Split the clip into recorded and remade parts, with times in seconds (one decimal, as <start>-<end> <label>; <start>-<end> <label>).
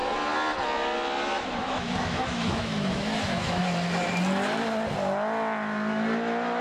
0.0-1.6 recorded; 1.6-3.6 remade; 3.6-6.6 recorded